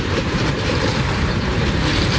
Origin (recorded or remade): remade